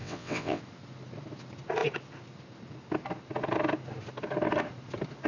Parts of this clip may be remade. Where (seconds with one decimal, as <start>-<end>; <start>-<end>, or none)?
0.0-0.6